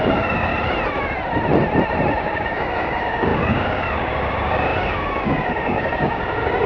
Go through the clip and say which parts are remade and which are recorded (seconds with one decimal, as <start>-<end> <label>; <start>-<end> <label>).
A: 0.0-0.5 remade; 0.5-2.2 recorded; 2.2-6.7 remade